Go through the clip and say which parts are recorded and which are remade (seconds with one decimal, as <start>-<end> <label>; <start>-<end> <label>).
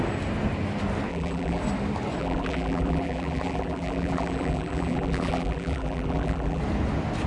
0.0-1.1 recorded; 1.1-1.6 remade; 1.6-2.2 recorded; 2.2-6.6 remade; 6.6-7.3 recorded